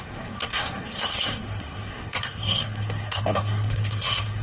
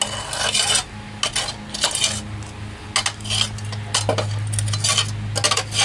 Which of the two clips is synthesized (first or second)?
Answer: first